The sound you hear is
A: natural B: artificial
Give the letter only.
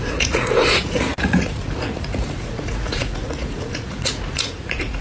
B